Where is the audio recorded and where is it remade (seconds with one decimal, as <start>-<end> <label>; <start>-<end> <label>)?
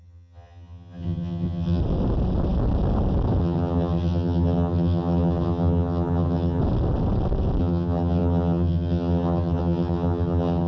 0.0-1.8 remade; 1.8-3.4 recorded; 3.4-6.6 remade; 6.6-7.6 recorded; 7.6-10.7 remade